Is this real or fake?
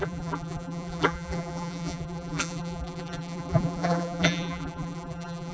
fake